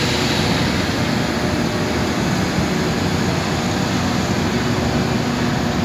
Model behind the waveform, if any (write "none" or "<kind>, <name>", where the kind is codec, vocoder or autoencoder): none